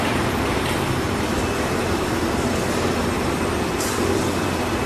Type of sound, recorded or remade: remade